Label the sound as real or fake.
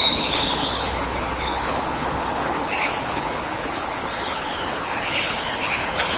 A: fake